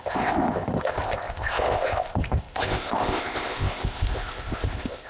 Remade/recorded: remade